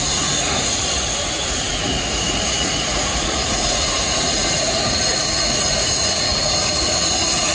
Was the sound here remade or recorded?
remade